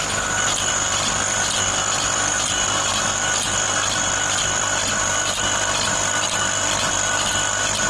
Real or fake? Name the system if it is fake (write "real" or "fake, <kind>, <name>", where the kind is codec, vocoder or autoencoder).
real